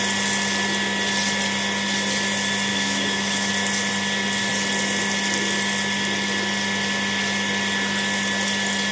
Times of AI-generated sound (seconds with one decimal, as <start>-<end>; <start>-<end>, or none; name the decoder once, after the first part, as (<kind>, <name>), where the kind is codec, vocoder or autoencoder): 2.7-3.5 (autoencoder, DAC-VAE)